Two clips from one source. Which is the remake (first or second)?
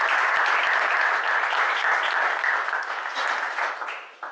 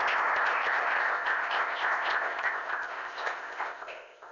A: second